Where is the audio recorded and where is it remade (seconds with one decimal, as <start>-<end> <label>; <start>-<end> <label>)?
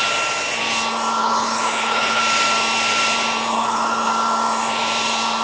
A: 0.0-1.2 recorded; 1.2-2.2 remade; 2.2-3.5 recorded; 3.5-4.1 remade; 4.1-5.4 recorded